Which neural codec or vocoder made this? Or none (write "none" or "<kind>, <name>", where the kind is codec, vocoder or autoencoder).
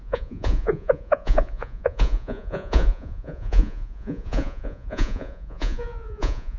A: vocoder, Vocos